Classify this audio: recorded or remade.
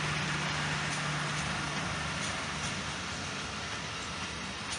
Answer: recorded